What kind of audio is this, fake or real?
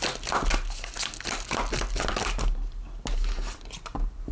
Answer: real